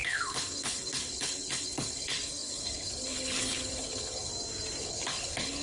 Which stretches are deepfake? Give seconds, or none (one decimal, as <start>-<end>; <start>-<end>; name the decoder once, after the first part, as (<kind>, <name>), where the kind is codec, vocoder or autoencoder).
0.0-4.3 (codec, HILCodec); 4.8-5.6